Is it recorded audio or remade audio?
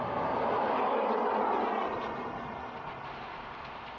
recorded